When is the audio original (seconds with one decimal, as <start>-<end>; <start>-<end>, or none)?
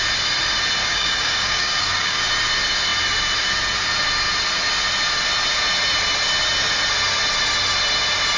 0.0-0.8; 2.2-8.4